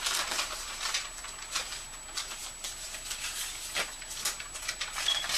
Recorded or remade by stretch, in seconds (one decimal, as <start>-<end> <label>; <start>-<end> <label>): 0.0-5.4 recorded